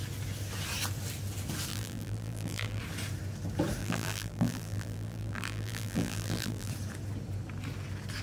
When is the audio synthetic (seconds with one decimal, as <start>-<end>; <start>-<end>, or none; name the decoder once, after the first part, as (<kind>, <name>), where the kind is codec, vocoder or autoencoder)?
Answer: 1.7-2.8 (vocoder, BigVGAN v2); 3.8-6.7